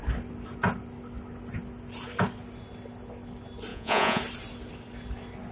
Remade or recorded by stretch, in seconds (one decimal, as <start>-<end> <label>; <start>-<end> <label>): 0.0-3.7 recorded; 3.7-4.2 remade; 4.2-5.5 recorded